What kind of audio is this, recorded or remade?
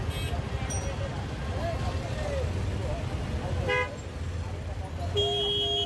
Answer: recorded